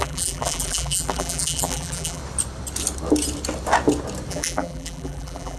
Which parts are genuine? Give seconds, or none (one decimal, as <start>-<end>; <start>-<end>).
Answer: 2.2-4.3